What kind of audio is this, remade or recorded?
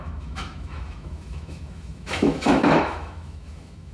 remade